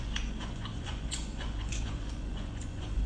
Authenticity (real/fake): fake